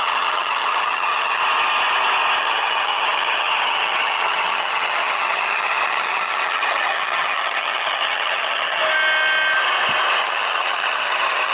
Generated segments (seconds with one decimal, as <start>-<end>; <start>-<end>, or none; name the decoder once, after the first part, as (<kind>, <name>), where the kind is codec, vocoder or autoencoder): 0.0-1.4 (vocoder, HiFi-GAN); 2.4-8.8; 10.2-11.5